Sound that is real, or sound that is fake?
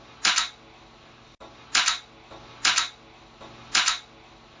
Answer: real